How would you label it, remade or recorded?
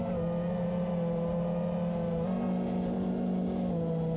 recorded